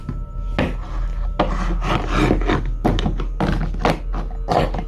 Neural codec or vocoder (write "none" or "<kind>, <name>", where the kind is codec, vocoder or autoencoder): none